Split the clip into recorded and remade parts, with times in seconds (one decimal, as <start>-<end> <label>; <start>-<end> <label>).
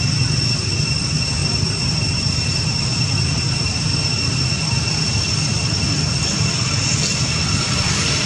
0.0-1.4 recorded; 1.4-4.3 remade; 4.3-8.3 recorded